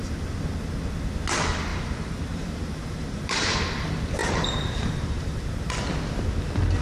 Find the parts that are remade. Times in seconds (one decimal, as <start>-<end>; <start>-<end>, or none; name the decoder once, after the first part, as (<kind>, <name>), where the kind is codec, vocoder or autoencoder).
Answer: 1.7-3.6 (vocoder, BigVGAN v2); 4.2-5.4